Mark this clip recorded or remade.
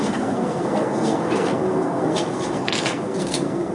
remade